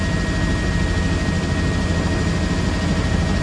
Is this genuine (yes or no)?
yes